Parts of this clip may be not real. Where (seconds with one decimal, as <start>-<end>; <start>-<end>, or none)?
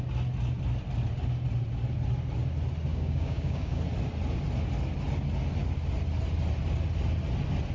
2.9-3.8